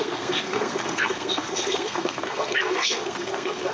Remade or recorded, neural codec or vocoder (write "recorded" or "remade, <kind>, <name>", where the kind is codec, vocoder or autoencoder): remade, codec, SNAC